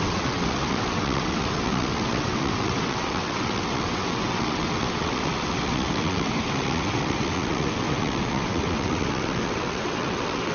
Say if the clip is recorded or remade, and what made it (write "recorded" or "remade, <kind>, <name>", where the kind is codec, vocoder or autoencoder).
remade, vocoder, WaveNeXt